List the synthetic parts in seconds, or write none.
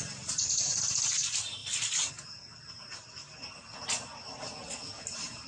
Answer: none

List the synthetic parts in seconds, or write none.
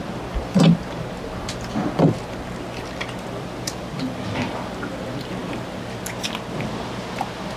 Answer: none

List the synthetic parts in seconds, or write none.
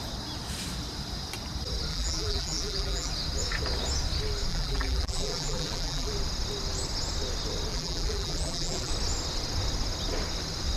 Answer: 1.9-3.1 (vocoder, BigVGAN v2); 4.5-6.1; 7.7-8.9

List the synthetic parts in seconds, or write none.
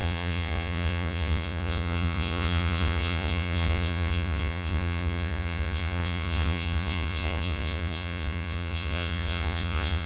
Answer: 0.0-10.1 (vocoder, Vocos)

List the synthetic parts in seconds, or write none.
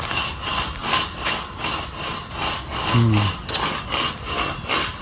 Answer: none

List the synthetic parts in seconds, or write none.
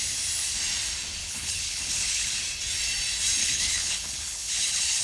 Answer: 1.2-2.4 (codec, HILCodec); 3.4-5.0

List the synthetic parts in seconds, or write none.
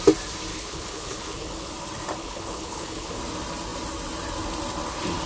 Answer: 0.5-1.7 (codec, HILCodec); 2.2-3.2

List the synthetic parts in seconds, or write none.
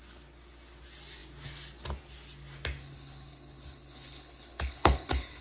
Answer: 2.8-5.4 (codec, HILCodec)